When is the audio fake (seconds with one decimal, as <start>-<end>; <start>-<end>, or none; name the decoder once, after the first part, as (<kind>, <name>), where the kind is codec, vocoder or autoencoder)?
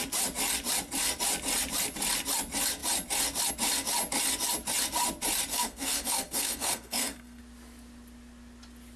5.5-7.4 (codec, SNAC)